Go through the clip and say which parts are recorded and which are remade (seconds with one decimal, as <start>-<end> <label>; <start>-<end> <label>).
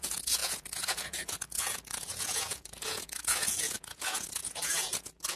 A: 0.0-5.4 remade